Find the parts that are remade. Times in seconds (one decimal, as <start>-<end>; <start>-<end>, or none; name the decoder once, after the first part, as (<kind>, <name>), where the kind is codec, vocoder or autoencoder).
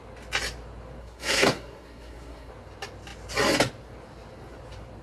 1.0-2.5 (codec, SNAC)